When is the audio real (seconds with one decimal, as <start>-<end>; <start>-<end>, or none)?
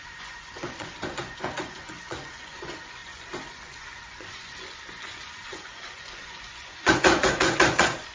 none